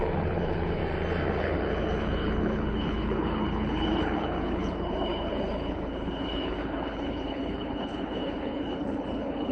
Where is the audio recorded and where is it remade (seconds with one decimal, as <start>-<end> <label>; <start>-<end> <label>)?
0.0-0.8 remade; 0.8-1.4 recorded; 1.4-9.5 remade